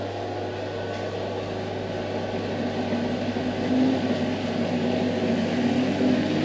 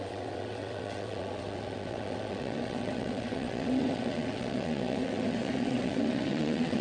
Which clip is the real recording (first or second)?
first